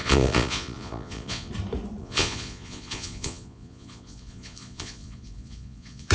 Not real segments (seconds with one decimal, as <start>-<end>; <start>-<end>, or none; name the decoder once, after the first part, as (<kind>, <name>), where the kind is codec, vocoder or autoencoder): 0.0-1.5 (vocoder, Vocos); 2.0-6.1